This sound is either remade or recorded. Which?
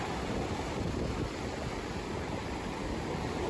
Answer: recorded